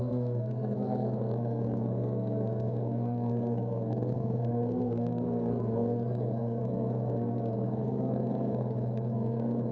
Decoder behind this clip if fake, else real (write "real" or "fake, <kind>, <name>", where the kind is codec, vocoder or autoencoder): fake, codec, SNAC